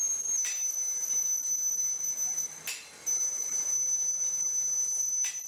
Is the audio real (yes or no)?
yes